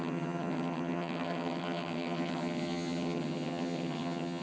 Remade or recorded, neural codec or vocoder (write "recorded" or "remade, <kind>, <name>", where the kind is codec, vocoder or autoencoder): remade, vocoder, HiFi-GAN